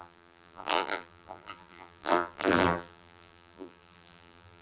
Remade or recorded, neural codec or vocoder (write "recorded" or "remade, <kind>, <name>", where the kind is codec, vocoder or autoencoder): remade, vocoder, BigVGAN v2